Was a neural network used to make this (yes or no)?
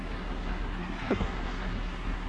yes